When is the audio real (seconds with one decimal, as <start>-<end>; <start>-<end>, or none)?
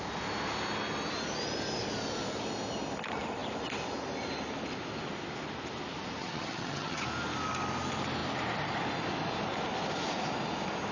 0.0-6.2; 7.0-10.9